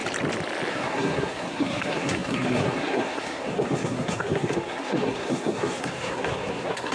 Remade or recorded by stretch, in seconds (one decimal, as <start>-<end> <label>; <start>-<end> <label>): 0.0-0.7 recorded; 0.7-6.9 remade